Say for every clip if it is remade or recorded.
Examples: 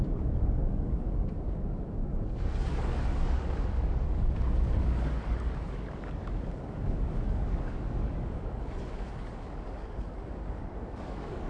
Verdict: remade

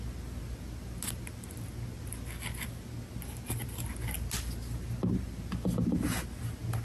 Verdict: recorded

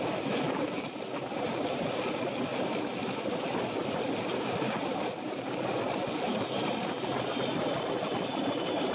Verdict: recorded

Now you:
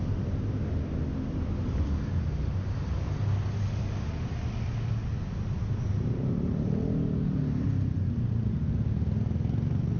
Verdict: recorded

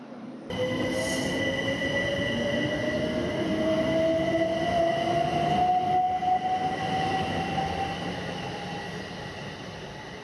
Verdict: recorded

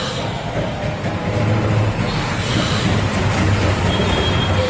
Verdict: recorded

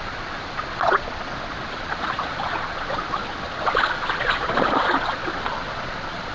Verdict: remade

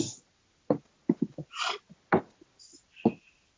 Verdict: recorded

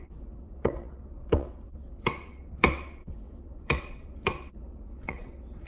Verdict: remade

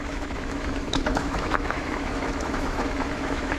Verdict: remade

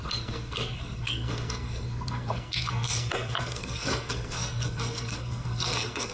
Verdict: remade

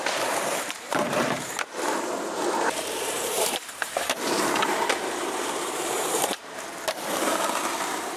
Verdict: remade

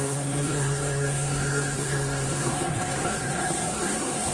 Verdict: remade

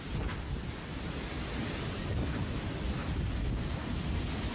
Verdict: recorded